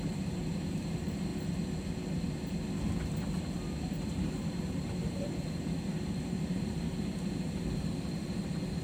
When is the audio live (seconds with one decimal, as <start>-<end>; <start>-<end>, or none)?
1.3-4.1